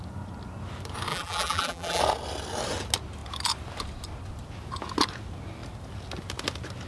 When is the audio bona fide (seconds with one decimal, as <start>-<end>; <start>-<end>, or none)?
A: 0.0-1.1; 2.0-6.9